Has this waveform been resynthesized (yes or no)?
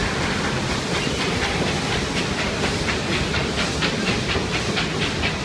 no